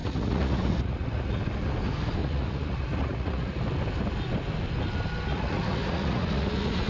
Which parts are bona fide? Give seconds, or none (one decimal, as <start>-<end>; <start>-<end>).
1.4-2.2; 3.6-5.3